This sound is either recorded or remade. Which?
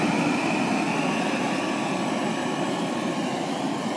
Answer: recorded